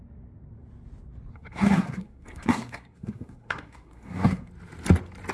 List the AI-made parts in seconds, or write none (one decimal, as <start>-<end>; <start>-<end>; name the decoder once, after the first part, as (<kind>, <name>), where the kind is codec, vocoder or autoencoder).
1.3-4.5 (codec, SNAC)